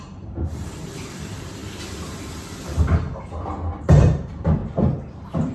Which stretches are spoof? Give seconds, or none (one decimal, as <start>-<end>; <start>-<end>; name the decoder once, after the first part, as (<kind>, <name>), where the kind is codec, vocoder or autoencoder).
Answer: 0.0-1.6 (vocoder, BigVGAN v2); 3.8-4.6